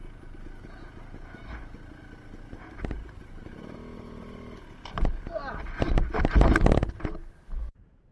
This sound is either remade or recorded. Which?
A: recorded